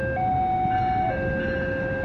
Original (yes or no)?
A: yes